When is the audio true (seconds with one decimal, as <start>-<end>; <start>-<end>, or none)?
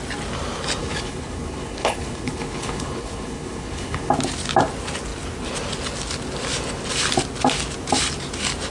0.0-0.8; 4.1-8.7